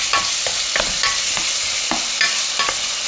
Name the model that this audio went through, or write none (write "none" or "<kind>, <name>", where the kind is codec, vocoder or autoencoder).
none